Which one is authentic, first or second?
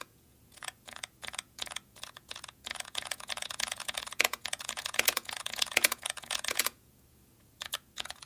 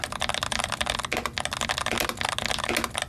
second